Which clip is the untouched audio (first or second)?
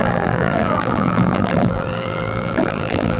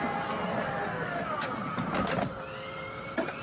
second